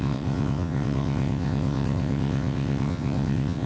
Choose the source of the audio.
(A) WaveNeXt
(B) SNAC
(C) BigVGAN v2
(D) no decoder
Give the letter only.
A